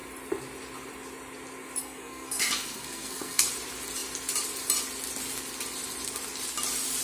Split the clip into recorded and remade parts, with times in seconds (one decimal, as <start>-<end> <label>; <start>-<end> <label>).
0.0-1.8 recorded; 1.8-3.5 remade; 3.5-7.0 recorded